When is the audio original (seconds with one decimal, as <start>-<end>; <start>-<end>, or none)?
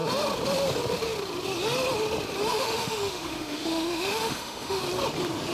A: 0.0-2.5; 4.8-5.5